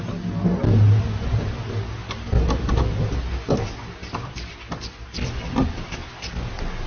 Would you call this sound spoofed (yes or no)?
no